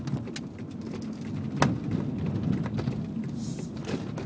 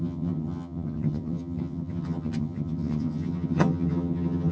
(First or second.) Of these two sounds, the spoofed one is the second